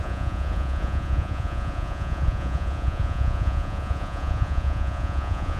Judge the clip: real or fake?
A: fake